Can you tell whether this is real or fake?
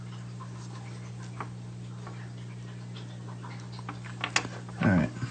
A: real